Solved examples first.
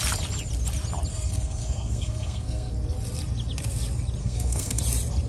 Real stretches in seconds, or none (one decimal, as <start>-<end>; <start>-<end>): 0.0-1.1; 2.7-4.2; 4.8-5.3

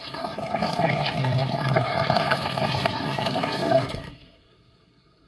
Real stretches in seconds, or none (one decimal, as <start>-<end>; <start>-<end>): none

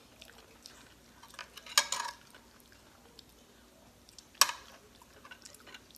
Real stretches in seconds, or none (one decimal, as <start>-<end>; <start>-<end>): 0.0-6.0

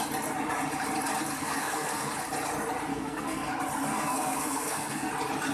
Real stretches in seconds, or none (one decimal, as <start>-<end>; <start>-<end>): 0.0-1.4; 2.1-2.9; 3.5-3.9; 5.1-5.5